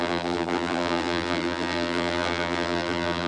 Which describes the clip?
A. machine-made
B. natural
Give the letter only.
A